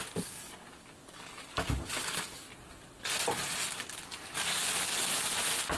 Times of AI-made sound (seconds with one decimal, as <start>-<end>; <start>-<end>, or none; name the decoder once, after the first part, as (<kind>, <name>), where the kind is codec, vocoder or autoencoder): 0.0-2.5 (codec, DAC)